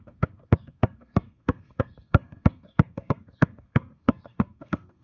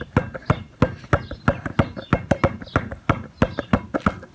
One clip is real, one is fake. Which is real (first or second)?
second